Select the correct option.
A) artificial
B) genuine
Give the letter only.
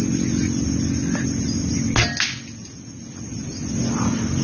B